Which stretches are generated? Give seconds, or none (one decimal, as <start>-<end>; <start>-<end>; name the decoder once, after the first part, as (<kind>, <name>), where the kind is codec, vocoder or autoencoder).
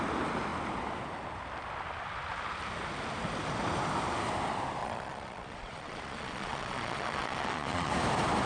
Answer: 4.8-7.9 (vocoder, Vocos)